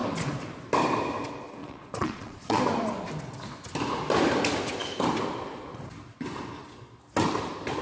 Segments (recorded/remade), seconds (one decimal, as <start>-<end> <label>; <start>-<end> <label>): 0.0-1.6 recorded; 1.6-2.6 remade; 2.6-7.8 recorded